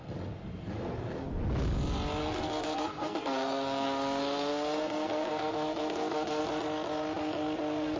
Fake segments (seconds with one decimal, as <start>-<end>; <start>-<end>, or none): 2.2-6.4